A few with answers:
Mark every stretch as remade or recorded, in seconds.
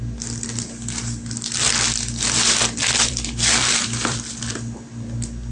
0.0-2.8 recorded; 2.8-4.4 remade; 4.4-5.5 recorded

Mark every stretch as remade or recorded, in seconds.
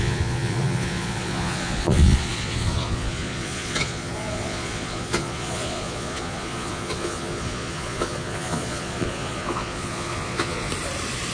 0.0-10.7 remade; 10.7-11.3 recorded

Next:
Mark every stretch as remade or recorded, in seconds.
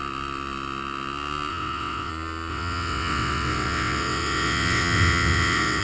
0.0-1.5 recorded; 1.5-2.1 remade; 2.1-2.5 recorded; 2.5-5.8 remade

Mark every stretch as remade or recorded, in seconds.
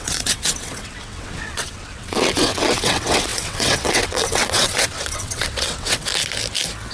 0.0-6.1 remade; 6.1-6.9 recorded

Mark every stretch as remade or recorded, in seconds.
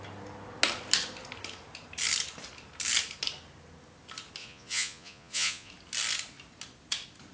0.0-4.4 recorded; 4.4-5.7 remade; 5.7-7.3 recorded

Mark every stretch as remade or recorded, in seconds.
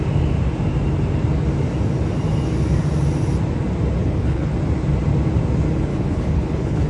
0.0-4.0 recorded; 4.0-4.5 remade; 4.5-5.9 recorded; 5.9-6.9 remade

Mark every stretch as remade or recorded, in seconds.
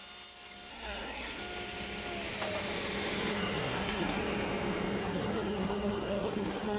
0.0-0.7 recorded; 0.7-1.4 remade; 1.4-3.3 recorded; 3.3-4.2 remade; 4.2-5.0 recorded; 5.0-6.8 remade